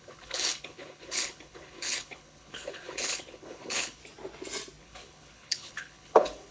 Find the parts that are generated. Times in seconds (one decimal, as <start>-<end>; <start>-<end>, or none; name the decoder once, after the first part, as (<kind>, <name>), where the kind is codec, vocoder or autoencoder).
0.0-4.0 (codec, HILCodec); 4.8-6.5

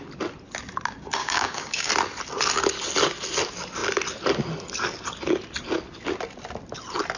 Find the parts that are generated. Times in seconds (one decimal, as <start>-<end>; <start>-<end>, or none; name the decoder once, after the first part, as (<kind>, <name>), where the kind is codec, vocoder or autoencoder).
1.2-1.9 (codec, DAC)

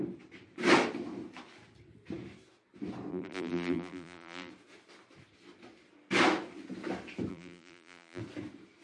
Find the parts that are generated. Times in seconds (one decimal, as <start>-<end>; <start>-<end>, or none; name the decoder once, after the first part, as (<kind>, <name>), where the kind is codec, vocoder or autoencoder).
3.1-4.5 (vocoder, BigVGAN v2); 7.3-8.2

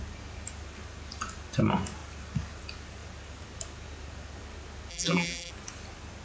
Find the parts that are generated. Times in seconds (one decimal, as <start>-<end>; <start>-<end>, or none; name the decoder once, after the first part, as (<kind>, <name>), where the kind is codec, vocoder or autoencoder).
4.9-5.5 (vocoder, BigVGAN v2)